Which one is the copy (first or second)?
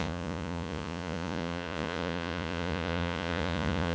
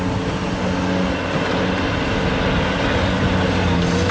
first